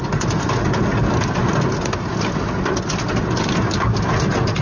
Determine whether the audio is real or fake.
real